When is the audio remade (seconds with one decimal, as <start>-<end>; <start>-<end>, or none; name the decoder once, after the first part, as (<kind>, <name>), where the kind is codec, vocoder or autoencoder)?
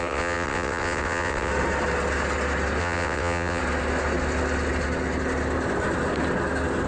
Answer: 0.0-1.5 (vocoder, WaveNeXt); 2.8-3.6